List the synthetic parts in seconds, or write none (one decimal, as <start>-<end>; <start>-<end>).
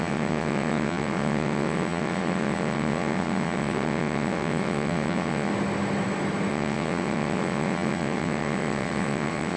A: 0.0-5.5; 6.5-9.6